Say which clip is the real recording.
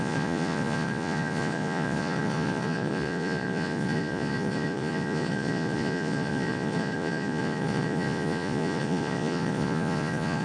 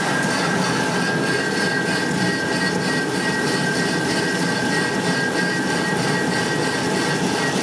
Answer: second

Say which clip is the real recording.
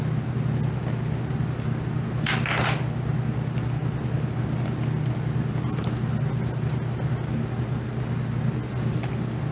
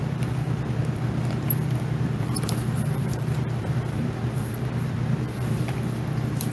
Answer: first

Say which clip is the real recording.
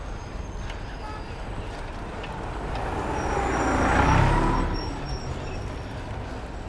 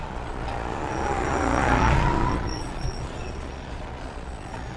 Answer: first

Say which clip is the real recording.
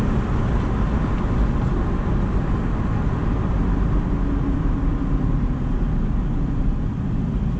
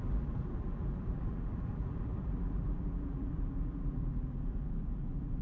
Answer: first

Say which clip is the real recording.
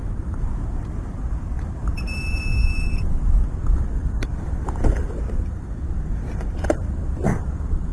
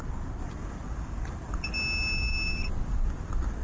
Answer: second